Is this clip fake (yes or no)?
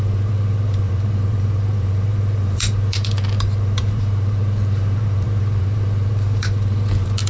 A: yes